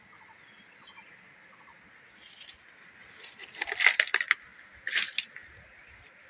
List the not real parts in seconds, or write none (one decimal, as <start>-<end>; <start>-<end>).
none